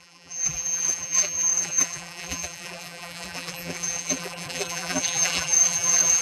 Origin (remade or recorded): remade